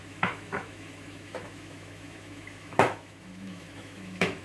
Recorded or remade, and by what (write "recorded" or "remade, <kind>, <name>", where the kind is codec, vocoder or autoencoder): remade, autoencoder, DAC-VAE